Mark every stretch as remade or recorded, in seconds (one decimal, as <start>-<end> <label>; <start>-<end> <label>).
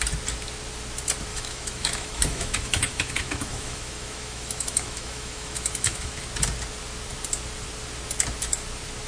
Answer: 0.0-1.3 recorded; 1.3-6.2 remade; 6.2-9.1 recorded